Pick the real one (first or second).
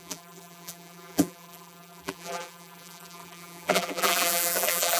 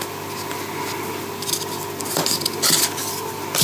second